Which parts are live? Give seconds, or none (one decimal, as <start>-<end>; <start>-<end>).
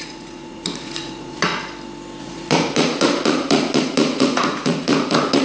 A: 1.5-2.2